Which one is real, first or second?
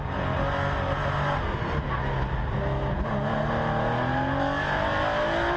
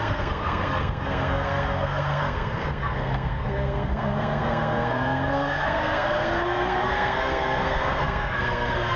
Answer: first